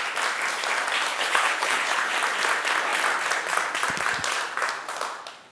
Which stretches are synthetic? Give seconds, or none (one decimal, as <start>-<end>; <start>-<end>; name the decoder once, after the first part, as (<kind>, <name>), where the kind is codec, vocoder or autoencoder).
1.1-2.1 (codec, HILCodec)